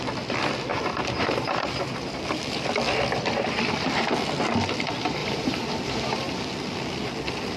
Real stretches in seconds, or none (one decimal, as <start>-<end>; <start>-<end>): 0.0-0.7; 2.2-5.2; 6.3-7.6